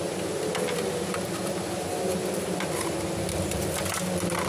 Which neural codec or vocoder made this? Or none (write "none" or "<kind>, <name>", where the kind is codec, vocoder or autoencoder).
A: none